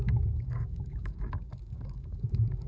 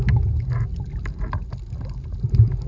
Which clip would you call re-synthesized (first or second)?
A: first